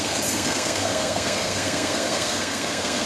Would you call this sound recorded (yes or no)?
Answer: no